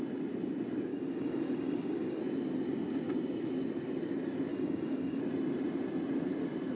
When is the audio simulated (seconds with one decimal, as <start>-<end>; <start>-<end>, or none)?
0.9-2.2; 4.5-5.2